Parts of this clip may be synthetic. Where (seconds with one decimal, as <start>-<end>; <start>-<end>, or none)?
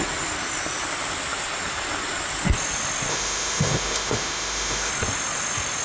3.1-4.9